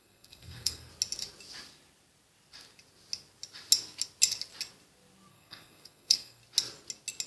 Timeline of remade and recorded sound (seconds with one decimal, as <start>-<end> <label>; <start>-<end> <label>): 0.0-0.9 remade; 0.9-5.3 recorded; 5.3-6.4 remade; 6.4-7.3 recorded